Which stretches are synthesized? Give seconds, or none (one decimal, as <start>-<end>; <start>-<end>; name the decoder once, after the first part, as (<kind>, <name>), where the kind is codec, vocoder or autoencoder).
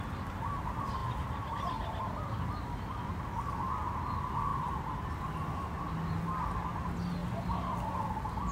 1.0-2.2 (vocoder, BigVGAN v2); 4.5-5.2; 7.2-7.8